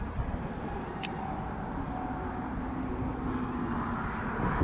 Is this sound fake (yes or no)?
no